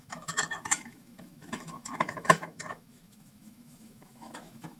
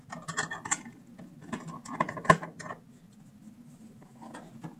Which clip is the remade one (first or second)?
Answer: first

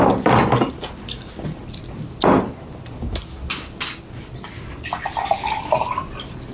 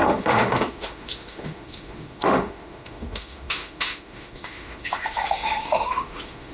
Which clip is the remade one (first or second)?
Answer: second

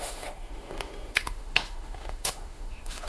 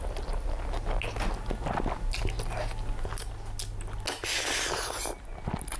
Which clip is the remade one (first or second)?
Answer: first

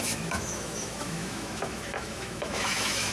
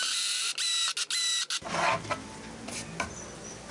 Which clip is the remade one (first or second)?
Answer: first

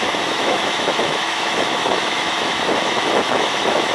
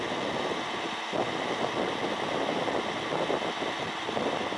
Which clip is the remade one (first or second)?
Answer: first